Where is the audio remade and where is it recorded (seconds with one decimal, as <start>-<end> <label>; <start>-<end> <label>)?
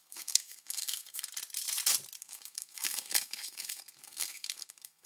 0.0-1.3 remade; 1.3-2.2 recorded; 2.2-5.1 remade